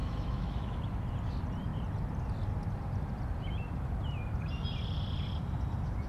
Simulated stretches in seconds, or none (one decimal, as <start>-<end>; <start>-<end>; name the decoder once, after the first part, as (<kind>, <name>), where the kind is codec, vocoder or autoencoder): 0.0-0.8 (autoencoder, DAC-VAE)